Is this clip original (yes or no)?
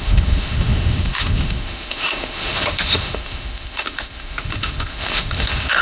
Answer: no